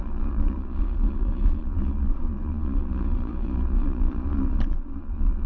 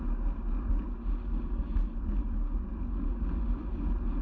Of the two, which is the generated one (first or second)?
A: first